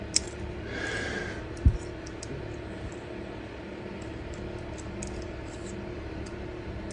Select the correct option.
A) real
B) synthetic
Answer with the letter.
A